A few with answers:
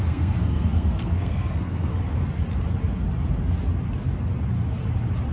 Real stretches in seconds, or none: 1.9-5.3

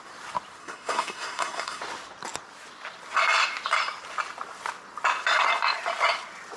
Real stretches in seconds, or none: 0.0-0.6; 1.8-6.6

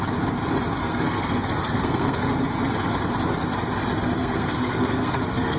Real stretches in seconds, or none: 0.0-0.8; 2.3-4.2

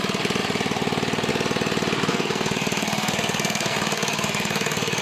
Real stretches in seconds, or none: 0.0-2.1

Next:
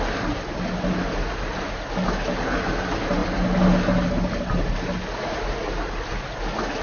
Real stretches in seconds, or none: 0.0-6.8